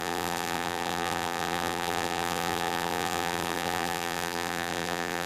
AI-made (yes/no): yes